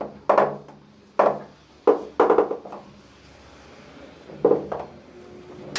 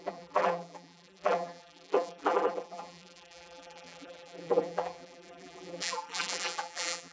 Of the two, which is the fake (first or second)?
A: second